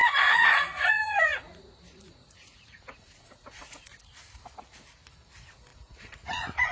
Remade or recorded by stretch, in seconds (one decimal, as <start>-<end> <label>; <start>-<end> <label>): 0.0-4.0 remade; 4.0-5.7 recorded; 5.7-6.7 remade